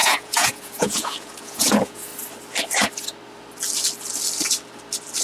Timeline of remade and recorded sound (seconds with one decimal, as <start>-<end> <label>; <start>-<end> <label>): 0.0-2.1 remade; 2.1-5.2 recorded